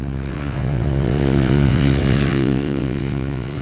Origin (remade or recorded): remade